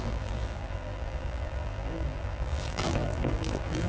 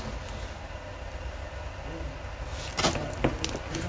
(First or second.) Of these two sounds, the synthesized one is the first